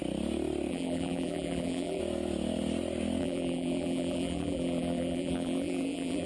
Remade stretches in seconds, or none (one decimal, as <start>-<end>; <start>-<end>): 0.7-2.0; 3.2-6.3